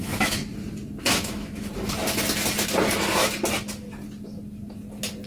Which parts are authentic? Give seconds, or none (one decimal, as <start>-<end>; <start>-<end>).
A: 0.4-1.0; 1.7-5.3